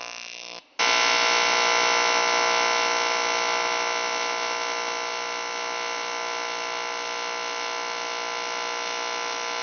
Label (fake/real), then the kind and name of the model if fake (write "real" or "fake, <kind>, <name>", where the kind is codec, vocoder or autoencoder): real